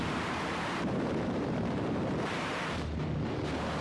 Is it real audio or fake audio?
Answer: fake